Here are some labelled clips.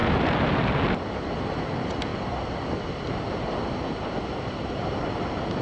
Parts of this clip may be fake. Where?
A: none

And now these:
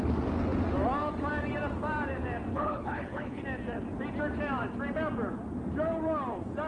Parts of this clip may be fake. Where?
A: 2.5-3.4 (codec, HILCodec)

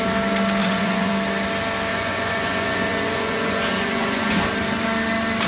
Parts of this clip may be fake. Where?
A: 0.6-1.1 (vocoder, Vocos); 1.9-4.4